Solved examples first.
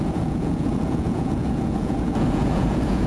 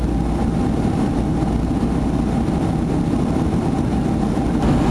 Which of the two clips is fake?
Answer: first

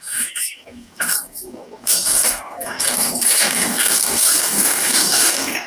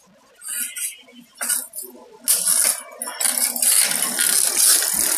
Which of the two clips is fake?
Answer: first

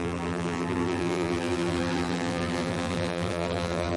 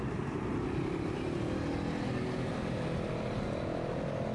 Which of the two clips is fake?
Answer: first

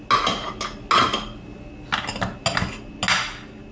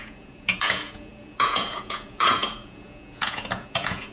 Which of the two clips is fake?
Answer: second